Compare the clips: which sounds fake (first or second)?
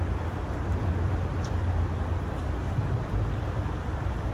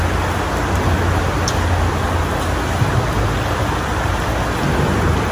first